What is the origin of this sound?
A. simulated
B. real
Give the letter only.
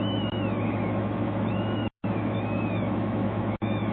A